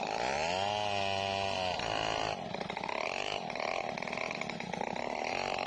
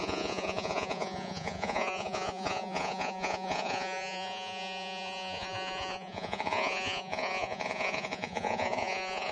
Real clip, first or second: first